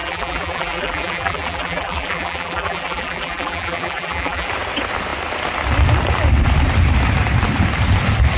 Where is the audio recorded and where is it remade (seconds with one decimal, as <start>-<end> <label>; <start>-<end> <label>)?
0.0-4.5 remade; 4.5-8.4 recorded